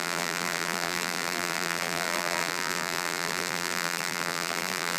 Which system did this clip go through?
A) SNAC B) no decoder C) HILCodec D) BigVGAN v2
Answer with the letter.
D